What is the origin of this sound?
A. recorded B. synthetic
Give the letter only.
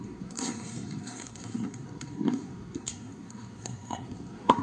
B